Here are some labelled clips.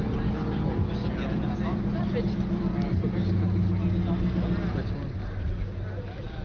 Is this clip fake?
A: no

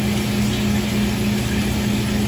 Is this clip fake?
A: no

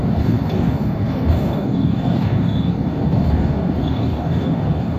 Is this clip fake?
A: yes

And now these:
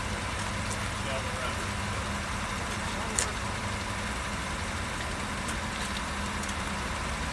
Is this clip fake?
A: no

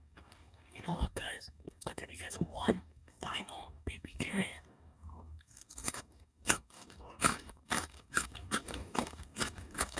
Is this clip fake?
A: yes